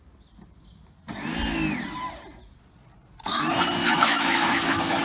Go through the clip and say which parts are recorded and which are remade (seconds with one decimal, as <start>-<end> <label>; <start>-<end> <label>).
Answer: 0.0-3.8 recorded; 3.8-5.0 remade